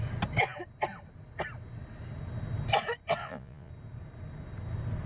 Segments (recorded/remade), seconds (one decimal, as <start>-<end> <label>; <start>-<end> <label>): 0.0-3.2 recorded; 3.2-3.7 remade; 3.7-5.1 recorded